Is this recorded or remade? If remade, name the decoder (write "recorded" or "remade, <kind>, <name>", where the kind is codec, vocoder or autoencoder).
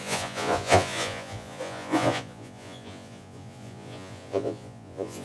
remade, vocoder, Vocos